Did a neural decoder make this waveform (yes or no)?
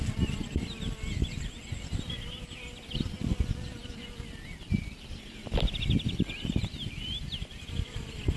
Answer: no